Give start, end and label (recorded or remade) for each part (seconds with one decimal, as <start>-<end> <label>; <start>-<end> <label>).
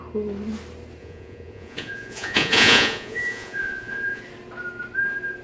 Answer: 0.0-1.0 recorded; 1.0-4.2 remade; 4.2-5.4 recorded